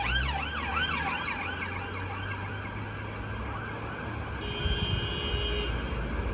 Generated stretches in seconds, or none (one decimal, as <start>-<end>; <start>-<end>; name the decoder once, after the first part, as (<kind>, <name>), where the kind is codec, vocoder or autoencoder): none